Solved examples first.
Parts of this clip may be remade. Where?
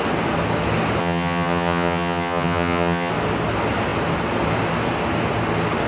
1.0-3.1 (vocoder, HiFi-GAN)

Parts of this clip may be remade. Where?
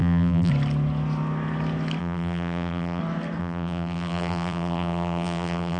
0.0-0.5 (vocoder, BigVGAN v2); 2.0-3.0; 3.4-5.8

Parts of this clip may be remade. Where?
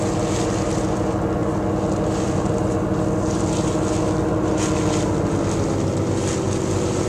none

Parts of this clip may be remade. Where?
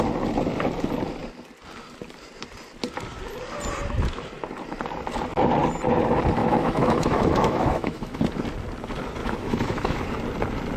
6.4-8.2 (autoencoder, DAC-VAE); 9.2-10.0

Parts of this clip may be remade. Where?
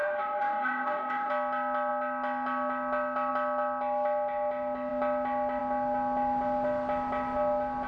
0.0-1.3 (autoencoder, DAC-VAE)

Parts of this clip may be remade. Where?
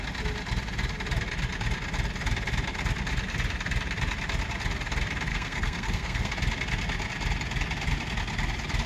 5.3-6.3 (codec, SNAC)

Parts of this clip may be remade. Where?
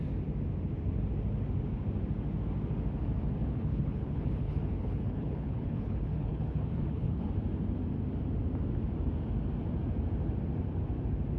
3.4-7.3 (codec, HILCodec)